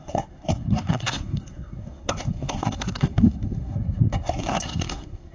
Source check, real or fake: fake